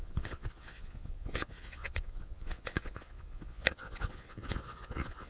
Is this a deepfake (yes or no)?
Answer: yes